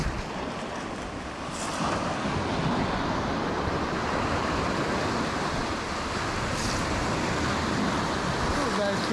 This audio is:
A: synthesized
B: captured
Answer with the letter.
B